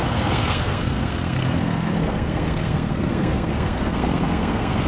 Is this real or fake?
fake